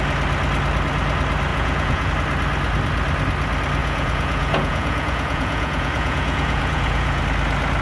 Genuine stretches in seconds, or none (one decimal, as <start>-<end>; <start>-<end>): 0.0-1.5; 2.1-3.8; 7.2-7.8